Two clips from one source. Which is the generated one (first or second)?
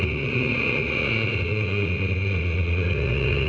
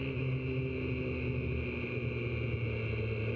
first